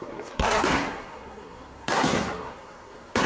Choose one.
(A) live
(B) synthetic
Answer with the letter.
B